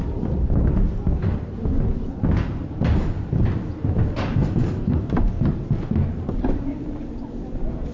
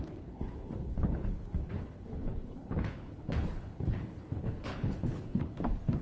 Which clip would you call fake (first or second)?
second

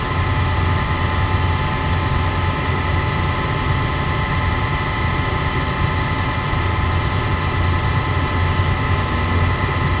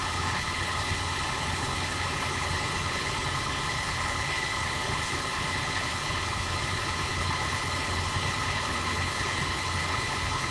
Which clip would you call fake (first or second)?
second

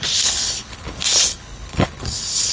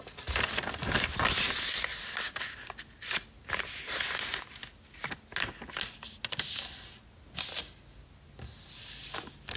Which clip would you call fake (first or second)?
first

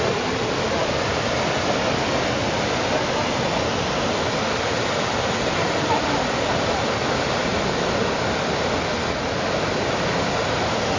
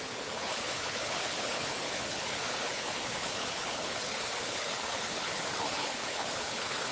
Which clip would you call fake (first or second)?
second